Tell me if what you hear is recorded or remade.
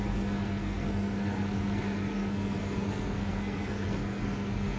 remade